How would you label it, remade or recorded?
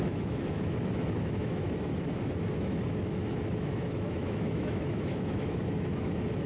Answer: remade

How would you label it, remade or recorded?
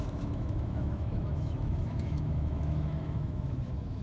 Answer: remade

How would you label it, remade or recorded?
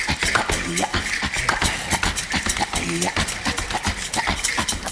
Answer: recorded